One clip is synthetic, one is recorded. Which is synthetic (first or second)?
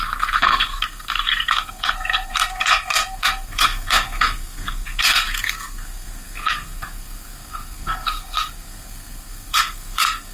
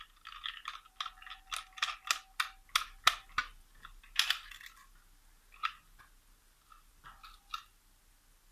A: first